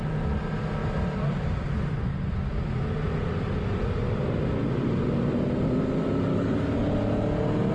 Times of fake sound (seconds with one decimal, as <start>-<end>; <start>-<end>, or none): 6.3-6.8